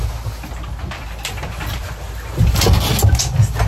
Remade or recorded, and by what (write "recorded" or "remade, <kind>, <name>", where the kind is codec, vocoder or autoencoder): recorded